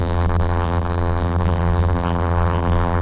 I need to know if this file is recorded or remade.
remade